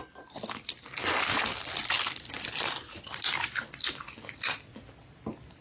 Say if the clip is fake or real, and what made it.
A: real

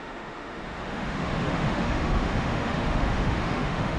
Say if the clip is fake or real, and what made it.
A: fake, autoencoder, DAC-VAE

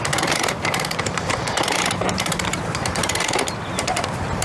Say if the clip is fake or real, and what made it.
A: fake, vocoder, BigVGAN v2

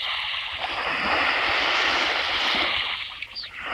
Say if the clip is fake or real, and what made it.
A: fake, vocoder, BigVGAN v2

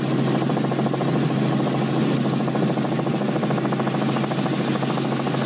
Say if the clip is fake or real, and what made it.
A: real